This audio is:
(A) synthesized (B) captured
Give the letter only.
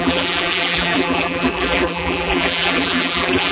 A